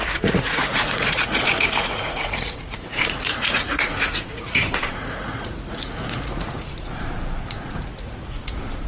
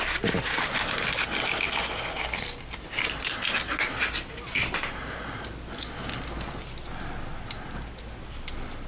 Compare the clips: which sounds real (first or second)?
second